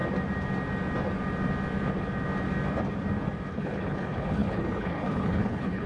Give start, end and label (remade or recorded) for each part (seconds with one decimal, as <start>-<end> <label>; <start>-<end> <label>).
0.0-3.5 recorded; 3.5-5.9 remade